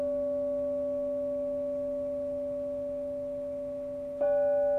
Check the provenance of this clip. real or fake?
real